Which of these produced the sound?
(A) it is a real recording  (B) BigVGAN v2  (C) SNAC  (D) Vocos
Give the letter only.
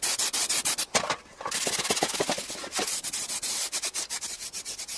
A